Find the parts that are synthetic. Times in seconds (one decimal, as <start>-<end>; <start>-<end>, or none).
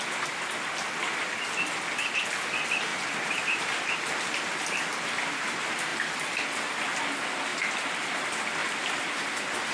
2.9-3.8